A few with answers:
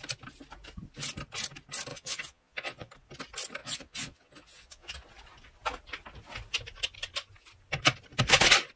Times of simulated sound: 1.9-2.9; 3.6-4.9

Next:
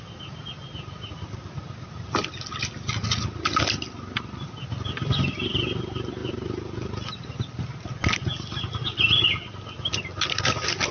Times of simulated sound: none

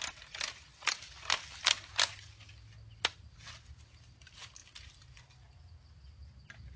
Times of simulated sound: none

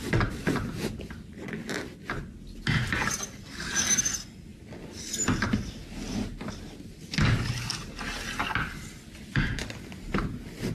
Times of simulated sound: none

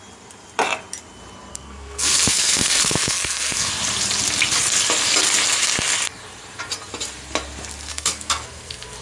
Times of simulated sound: 1.5-3.7; 7.9-9.0

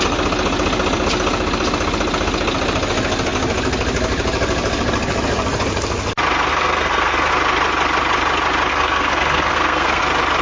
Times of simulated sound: 6.5-7.3; 8.7-10.0

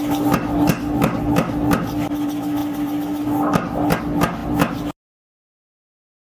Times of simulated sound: none